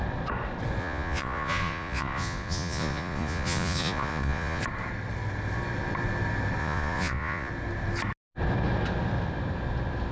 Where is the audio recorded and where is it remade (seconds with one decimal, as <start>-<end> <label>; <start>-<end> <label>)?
0.0-0.8 recorded; 0.8-4.6 remade; 4.6-6.6 recorded; 6.6-7.5 remade; 7.5-10.1 recorded